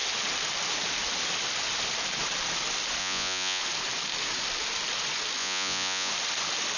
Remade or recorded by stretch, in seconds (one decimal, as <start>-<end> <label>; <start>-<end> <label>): 0.0-3.0 recorded; 3.0-3.6 remade; 3.6-5.4 recorded; 5.4-6.1 remade; 6.1-6.8 recorded